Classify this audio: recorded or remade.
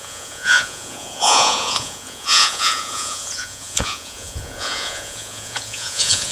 remade